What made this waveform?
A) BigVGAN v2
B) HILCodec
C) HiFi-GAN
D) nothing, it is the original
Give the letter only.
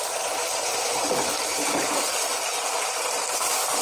D